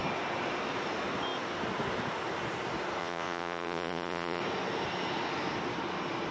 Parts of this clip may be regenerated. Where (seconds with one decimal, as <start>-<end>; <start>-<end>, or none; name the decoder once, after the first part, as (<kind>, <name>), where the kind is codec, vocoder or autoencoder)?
3.0-4.4 (vocoder, Vocos)